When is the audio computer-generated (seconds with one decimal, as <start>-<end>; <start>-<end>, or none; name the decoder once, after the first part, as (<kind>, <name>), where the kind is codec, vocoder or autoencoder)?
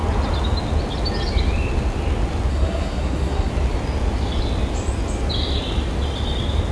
2.5-3.5 (codec, SNAC)